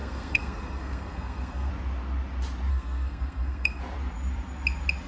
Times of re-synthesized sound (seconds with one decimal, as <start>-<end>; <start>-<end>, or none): 0.0-1.7; 2.7-3.8